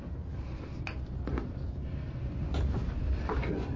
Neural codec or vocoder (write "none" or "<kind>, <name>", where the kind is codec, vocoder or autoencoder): none